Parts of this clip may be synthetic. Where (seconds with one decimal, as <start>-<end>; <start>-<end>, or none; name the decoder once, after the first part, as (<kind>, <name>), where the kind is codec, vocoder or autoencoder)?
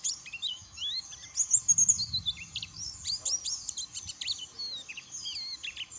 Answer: 0.5-1.1 (autoencoder, DAC-VAE)